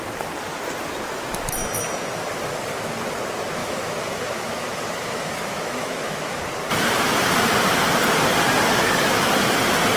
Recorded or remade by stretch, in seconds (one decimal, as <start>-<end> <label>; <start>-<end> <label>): 0.0-3.6 recorded; 3.6-6.4 remade; 6.4-10.0 recorded